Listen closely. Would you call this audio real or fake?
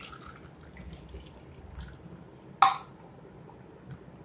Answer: real